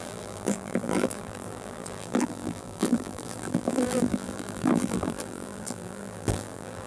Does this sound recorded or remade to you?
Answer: remade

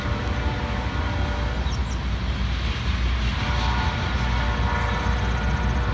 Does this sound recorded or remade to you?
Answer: recorded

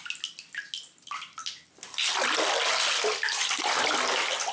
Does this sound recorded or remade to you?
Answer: recorded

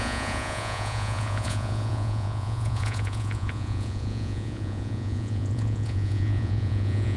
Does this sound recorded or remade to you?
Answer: remade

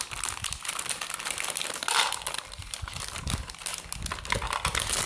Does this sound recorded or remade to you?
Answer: recorded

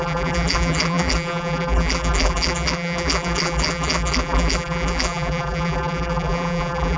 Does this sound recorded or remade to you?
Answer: remade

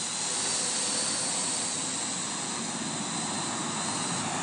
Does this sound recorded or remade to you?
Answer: recorded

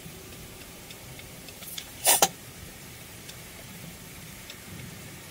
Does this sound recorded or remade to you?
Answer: remade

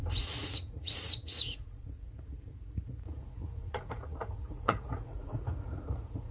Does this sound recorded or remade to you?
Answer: remade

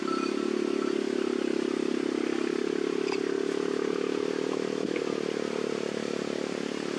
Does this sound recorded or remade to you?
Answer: recorded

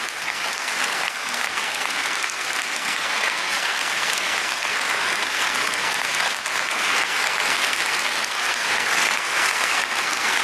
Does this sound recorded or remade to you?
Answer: remade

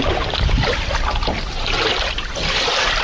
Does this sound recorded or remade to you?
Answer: recorded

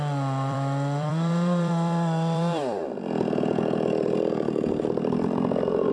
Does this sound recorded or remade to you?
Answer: remade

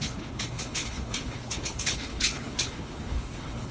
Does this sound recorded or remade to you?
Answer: remade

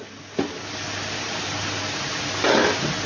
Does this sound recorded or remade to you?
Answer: recorded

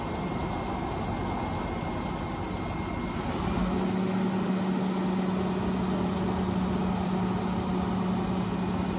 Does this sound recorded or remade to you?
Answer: recorded